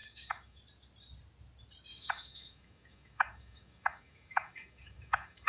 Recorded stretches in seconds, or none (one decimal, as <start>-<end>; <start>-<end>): 0.6-1.9